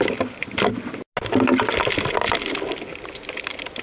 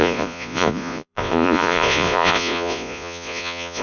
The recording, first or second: first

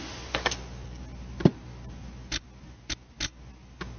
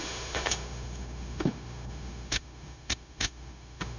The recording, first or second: first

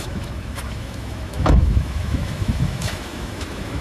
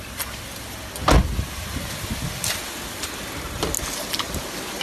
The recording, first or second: second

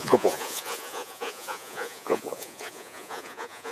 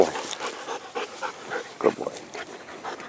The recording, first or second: second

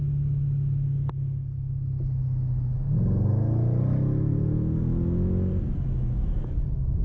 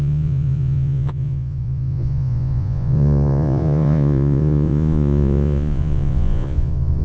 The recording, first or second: first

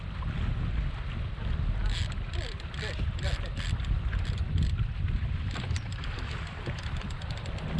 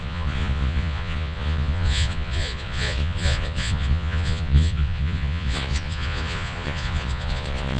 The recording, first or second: first